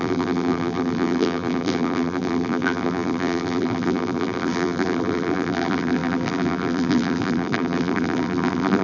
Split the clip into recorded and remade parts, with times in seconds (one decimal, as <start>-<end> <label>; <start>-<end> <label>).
0.0-8.8 remade